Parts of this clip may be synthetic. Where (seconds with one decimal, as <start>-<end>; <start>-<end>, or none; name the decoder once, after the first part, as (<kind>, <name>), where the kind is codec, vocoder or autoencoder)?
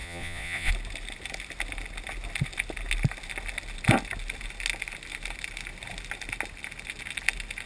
0.0-0.7 (vocoder, Vocos)